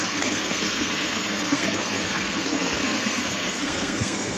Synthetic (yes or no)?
yes